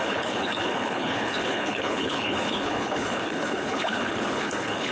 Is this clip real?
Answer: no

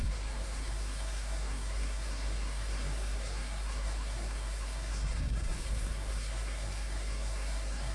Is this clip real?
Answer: no